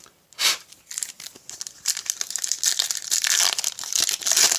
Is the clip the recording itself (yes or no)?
yes